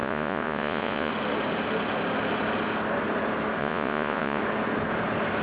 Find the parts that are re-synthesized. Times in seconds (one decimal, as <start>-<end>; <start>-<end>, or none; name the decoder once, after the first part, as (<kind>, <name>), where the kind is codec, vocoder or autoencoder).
0.0-1.1 (vocoder, Vocos); 3.6-4.4